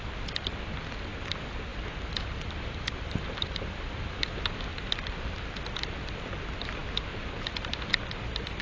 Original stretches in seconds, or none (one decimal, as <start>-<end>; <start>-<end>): 0.0-1.7; 4.2-8.6